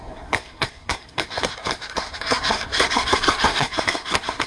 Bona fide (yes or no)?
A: no